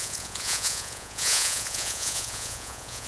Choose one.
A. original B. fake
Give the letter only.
B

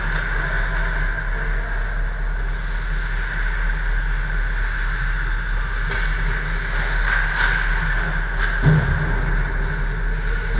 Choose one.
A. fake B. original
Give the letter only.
B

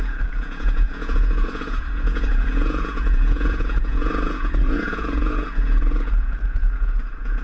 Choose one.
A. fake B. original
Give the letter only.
A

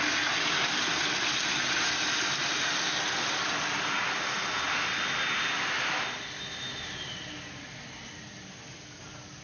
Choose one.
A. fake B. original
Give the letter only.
B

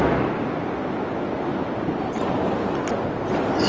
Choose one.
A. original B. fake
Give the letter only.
A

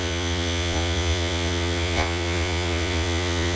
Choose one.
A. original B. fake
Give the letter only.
B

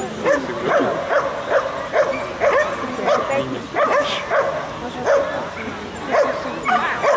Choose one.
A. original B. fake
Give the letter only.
A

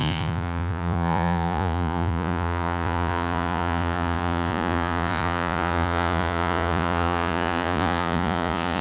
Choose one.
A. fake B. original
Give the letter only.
A